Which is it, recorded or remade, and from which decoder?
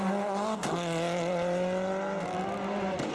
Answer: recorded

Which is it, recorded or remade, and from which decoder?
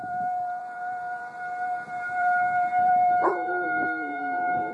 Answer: remade, vocoder, BigVGAN v2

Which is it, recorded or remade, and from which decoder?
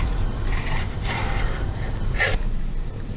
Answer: remade, vocoder, BigVGAN v2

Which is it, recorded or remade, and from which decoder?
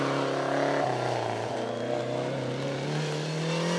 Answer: recorded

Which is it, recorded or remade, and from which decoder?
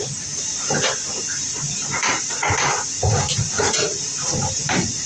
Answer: remade, vocoder, BigVGAN v2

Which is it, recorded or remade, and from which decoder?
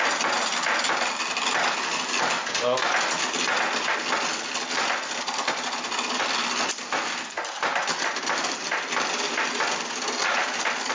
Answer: recorded